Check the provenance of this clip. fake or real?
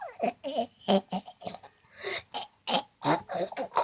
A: real